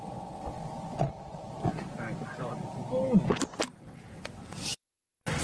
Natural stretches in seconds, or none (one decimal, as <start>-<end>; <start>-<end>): 0.6-3.8